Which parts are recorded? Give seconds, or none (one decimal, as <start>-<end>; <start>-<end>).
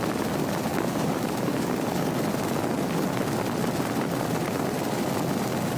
0.0-0.7; 2.1-5.8